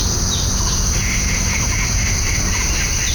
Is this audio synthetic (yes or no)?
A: no